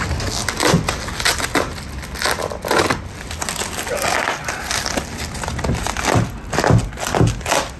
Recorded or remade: recorded